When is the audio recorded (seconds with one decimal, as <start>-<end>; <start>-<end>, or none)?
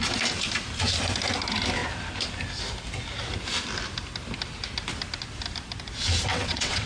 0.0-6.3